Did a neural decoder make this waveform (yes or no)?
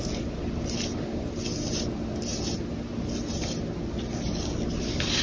no